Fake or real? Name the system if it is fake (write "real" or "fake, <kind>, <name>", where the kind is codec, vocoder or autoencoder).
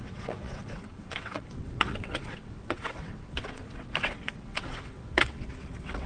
fake, vocoder, WaveNeXt